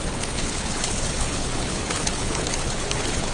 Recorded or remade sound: remade